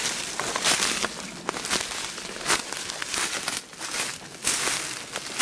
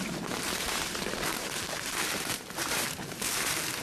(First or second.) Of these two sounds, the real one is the first